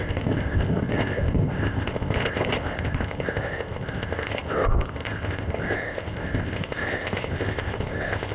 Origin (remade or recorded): remade